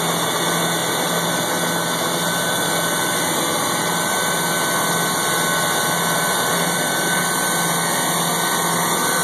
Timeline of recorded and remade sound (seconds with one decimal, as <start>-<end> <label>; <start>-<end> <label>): 0.0-6.5 recorded; 6.5-7.2 remade; 7.2-9.2 recorded